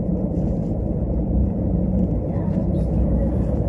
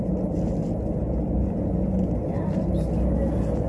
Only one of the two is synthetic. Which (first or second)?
first